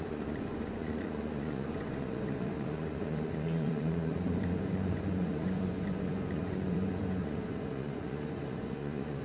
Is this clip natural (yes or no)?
no